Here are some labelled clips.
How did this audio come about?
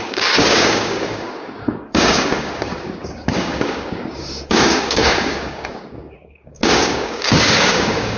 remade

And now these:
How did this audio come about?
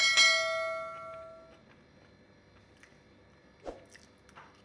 recorded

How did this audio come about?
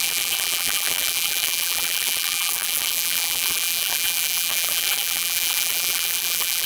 remade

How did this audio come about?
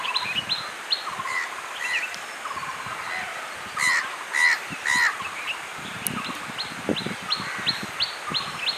recorded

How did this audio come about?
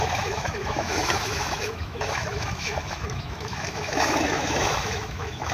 remade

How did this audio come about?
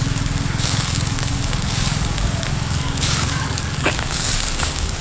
remade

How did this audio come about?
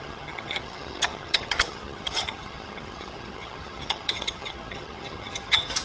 remade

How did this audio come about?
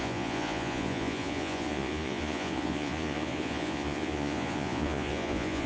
remade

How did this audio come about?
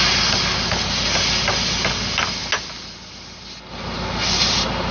recorded